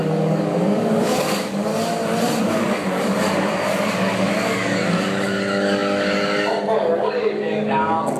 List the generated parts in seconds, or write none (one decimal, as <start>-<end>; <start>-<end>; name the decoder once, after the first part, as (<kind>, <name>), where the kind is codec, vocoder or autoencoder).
0.0-1.7 (codec, DAC); 2.4-8.2